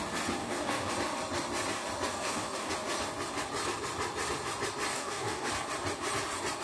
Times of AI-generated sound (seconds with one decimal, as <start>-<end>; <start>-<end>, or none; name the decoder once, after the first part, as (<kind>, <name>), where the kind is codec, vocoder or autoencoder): 0.4-0.9 (codec, DAC); 2.1-2.7; 4.9-5.5